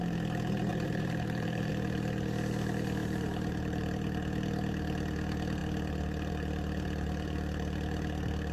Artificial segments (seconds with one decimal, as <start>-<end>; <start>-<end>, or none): 0.7-1.7; 3.0-3.9